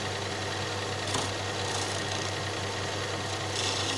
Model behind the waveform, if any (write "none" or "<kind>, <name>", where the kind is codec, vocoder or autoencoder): none